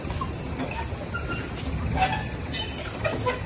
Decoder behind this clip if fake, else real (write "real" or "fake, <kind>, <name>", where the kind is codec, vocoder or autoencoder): real